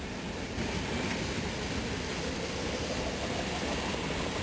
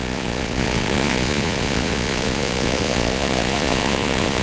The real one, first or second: first